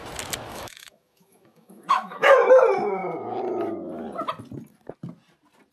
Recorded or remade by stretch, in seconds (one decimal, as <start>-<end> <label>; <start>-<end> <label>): 0.0-0.5 recorded; 0.5-2.5 remade; 2.5-5.7 recorded